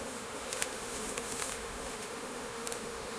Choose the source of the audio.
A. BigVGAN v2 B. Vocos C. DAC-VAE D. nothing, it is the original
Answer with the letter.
C